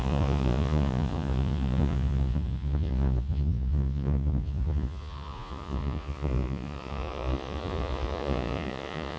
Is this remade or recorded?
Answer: remade